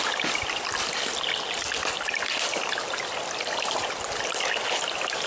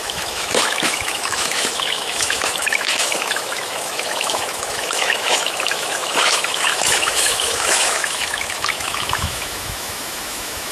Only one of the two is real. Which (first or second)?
first